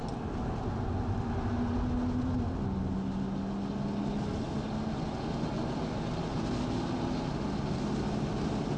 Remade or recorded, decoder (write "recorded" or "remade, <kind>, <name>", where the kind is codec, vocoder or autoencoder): recorded